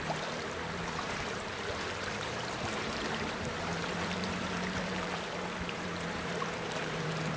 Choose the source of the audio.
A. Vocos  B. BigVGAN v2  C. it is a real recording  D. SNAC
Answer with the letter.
B